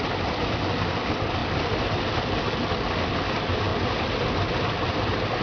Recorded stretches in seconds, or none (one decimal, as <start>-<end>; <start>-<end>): 0.0-5.4

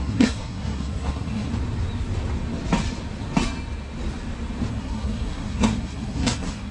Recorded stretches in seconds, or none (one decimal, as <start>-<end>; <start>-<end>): 1.5-4.7

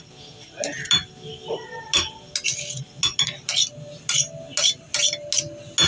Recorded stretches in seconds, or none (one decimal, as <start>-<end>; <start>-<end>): 0.0-5.9

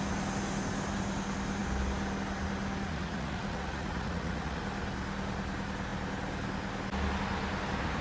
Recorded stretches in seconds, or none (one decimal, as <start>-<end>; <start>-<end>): 0.0-2.9; 4.6-8.0

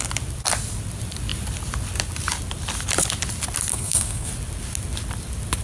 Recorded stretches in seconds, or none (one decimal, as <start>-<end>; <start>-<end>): 0.0-3.7; 4.3-5.6

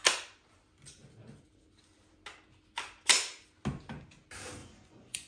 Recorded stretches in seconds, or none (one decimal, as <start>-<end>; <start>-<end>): 0.0-4.6

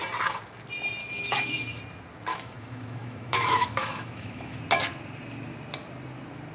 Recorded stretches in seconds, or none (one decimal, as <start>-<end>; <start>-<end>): 0.0-1.0; 1.8-2.3; 4.6-6.5